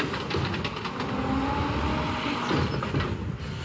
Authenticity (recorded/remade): recorded